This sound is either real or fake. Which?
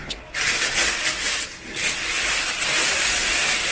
real